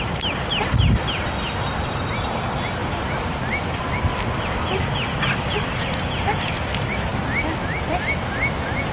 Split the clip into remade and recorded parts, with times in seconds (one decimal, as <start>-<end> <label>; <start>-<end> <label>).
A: 0.0-8.9 recorded